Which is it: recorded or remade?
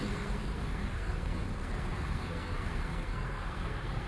remade